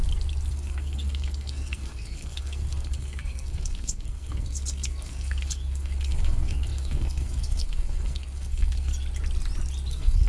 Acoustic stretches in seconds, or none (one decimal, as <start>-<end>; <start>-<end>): 0.0-0.5; 8.9-9.9